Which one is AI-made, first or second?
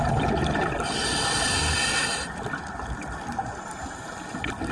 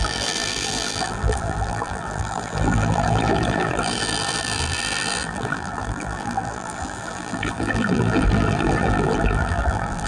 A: second